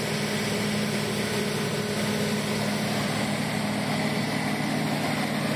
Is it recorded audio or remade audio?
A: recorded